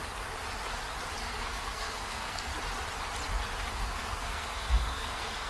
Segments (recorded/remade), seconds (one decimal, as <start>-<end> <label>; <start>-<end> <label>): 0.0-1.2 recorded; 1.2-2.5 remade; 2.5-3.7 recorded; 3.7-5.5 remade